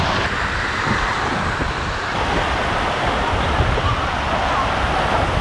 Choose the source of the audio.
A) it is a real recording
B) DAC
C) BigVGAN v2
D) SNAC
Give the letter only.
A